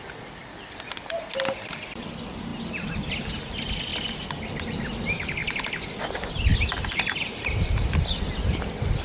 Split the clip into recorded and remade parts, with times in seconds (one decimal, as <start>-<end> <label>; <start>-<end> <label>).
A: 0.0-9.0 recorded